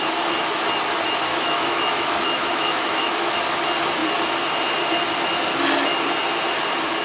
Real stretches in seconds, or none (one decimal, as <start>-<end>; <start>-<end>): 0.0-1.3; 3.4-7.0